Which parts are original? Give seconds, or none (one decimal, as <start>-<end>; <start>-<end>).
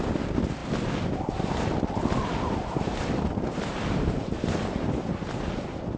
0.0-6.0